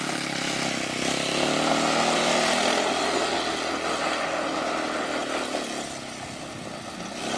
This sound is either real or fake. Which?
real